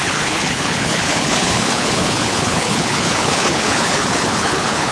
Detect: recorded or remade remade